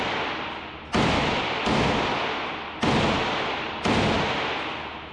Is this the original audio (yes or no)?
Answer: yes